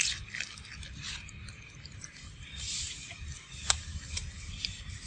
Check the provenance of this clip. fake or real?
real